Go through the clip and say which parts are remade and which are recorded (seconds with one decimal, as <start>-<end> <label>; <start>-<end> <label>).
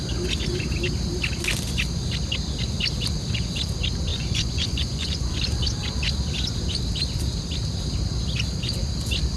0.0-4.1 recorded; 4.1-5.3 remade; 5.3-9.4 recorded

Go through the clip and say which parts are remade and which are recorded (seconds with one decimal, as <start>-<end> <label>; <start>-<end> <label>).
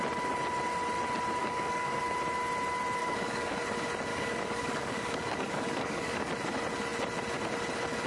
0.0-1.4 recorded; 1.4-2.0 remade; 2.0-3.0 recorded; 3.0-3.6 remade; 3.6-4.1 recorded; 4.1-6.3 remade; 6.3-8.1 recorded